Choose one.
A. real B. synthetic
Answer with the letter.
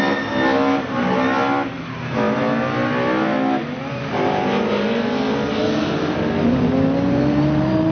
A